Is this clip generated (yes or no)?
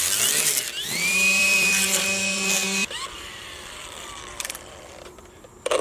yes